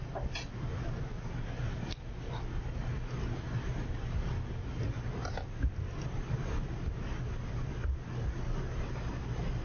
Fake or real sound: real